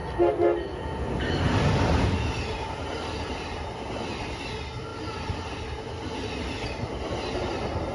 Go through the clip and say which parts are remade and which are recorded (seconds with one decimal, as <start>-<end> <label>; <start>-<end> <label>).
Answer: 0.0-7.9 recorded